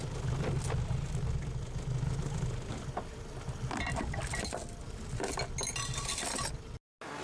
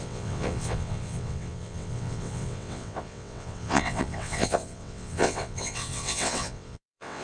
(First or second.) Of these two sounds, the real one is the first